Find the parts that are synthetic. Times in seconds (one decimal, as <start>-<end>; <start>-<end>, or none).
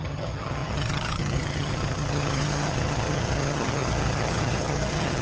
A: 0.0-5.2